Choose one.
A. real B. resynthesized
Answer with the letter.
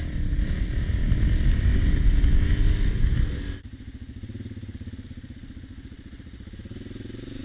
A